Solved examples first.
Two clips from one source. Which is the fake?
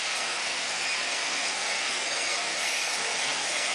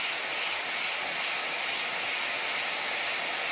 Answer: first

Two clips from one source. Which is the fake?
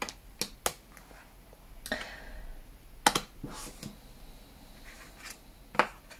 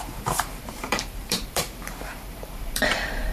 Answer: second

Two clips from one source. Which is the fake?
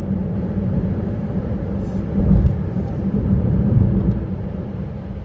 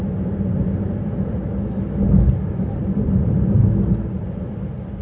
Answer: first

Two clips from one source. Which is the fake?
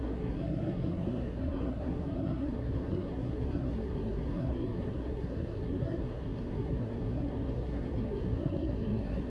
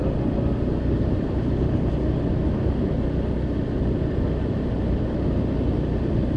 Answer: first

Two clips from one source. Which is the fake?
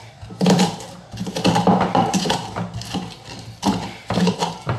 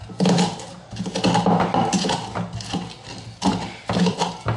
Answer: first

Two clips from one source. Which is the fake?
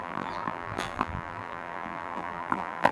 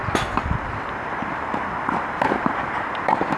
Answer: first